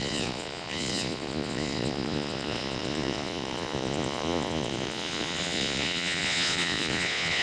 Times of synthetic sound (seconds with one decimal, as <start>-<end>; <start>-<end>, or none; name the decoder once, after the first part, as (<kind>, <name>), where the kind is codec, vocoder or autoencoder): 0.0-7.4 (vocoder, Vocos)